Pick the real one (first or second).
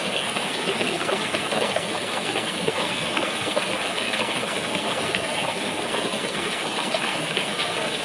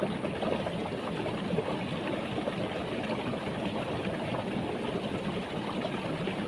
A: second